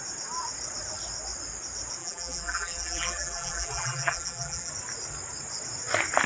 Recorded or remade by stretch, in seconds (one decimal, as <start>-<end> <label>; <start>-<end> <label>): 0.0-2.0 recorded; 2.0-4.7 remade; 4.7-6.3 recorded